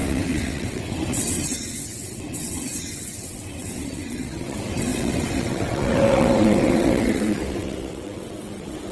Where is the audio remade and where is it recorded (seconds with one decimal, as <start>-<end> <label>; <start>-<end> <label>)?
0.0-8.9 remade